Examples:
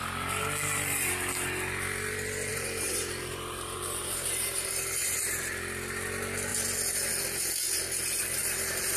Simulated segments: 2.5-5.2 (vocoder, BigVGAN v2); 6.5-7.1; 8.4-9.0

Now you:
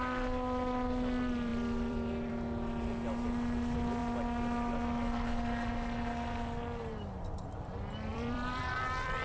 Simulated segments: 1.5-2.3 (vocoder, BigVGAN v2); 8.1-9.2